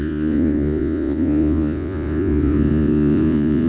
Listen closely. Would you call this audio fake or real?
fake